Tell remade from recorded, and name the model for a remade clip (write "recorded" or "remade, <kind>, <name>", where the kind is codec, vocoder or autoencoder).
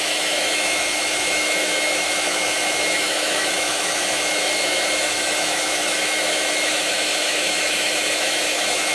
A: remade, autoencoder, DAC-VAE